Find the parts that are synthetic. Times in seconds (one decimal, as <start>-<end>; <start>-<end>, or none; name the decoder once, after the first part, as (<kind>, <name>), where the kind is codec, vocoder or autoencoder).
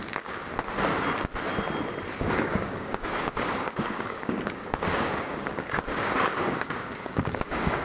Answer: 0.0-0.5 (codec, DAC); 2.2-7.8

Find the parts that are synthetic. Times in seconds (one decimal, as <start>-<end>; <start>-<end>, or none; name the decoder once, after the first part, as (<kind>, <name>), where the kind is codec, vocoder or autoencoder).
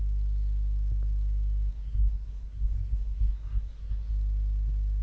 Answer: 1.7-4.1 (codec, SNAC)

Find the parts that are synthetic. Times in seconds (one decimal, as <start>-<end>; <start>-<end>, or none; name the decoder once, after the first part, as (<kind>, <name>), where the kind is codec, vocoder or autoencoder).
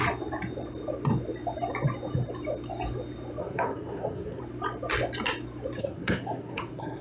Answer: 3.4-4.4 (codec, SNAC); 5.8-7.0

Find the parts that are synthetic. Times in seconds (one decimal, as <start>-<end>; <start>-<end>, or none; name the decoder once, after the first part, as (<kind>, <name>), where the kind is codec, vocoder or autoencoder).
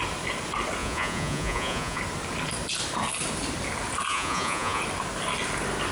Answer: 0.8-2.0 (vocoder, Vocos); 4.1-4.8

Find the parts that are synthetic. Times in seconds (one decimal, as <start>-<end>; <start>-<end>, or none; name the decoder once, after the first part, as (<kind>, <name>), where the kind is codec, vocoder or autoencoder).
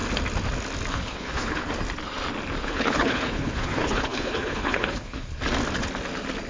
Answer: 0.9-1.7 (codec, HILCodec); 2.6-5.4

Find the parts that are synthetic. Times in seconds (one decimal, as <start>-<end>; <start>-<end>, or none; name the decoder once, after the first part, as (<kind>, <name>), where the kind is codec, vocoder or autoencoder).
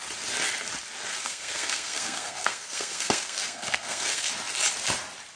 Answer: 1.1-4.3 (codec, SNAC)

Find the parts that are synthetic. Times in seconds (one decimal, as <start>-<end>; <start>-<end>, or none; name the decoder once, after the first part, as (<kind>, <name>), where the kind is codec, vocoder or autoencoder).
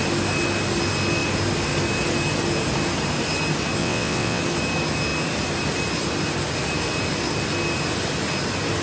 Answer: 3.8-4.4 (vocoder, WaveNeXt)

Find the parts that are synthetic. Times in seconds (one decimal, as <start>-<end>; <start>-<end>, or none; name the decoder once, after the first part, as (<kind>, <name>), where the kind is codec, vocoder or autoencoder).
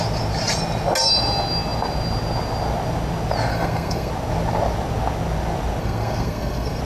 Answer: 3.5-4.1 (codec, SNAC); 5.8-6.8